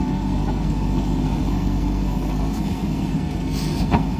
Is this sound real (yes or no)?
no